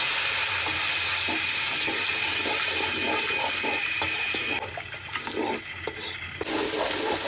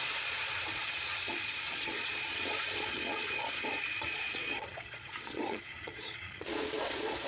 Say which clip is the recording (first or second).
first